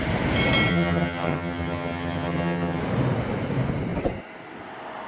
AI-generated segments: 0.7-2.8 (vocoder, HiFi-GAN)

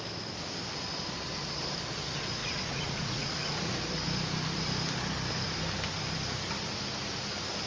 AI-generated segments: 2.4-3.7 (vocoder, Vocos)

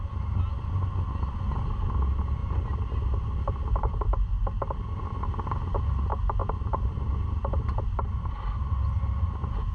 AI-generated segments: 2.4-3.0 (vocoder, BigVGAN v2); 6.4-7.8

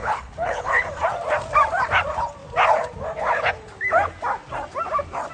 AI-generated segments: 0.0-0.8 (codec, HILCodec)